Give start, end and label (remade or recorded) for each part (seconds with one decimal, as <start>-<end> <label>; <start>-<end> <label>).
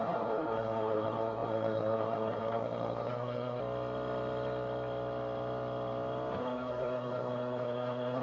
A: 0.0-3.6 remade; 3.6-6.4 recorded; 6.4-8.2 remade